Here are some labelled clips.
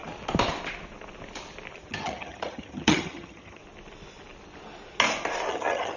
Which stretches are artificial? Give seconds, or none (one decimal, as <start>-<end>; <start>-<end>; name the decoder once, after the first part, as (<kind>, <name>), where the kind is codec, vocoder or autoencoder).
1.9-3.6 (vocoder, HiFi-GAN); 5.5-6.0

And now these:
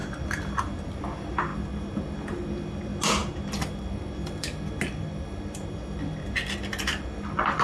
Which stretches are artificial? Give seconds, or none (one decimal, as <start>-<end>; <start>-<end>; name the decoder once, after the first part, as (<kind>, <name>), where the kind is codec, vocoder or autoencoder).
none

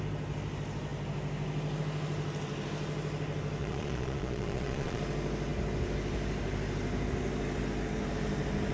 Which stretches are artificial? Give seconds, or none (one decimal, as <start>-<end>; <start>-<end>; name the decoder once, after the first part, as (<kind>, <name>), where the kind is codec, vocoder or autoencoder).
3.6-5.0 (vocoder, Vocos)

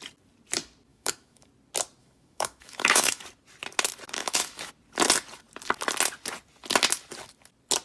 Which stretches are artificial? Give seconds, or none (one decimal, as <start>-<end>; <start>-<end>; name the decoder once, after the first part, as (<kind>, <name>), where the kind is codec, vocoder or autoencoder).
0.9-1.5 (autoencoder, DAC-VAE); 2.0-3.2; 4.2-4.7

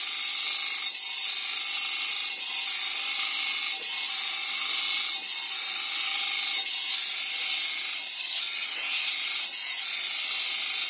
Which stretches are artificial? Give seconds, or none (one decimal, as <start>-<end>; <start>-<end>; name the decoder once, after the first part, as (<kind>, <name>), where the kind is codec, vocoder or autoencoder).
8.2-9.1 (vocoder, HiFi-GAN)

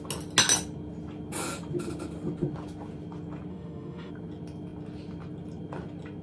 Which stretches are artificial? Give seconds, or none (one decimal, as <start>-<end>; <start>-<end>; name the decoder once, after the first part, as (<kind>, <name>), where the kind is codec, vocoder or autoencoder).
3.5-4.1 (autoencoder, DAC-VAE)

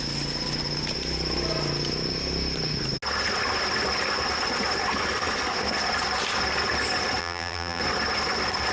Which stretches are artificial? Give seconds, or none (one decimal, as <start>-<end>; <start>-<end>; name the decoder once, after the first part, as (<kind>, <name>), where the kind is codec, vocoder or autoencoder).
7.2-7.8 (vocoder, BigVGAN v2)

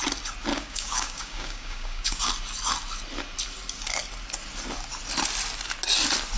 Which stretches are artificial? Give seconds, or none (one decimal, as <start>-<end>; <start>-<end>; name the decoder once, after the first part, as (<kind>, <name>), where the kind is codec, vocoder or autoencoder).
0.5-2.2 (codec, DAC)